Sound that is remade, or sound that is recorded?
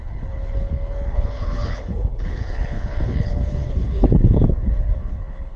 remade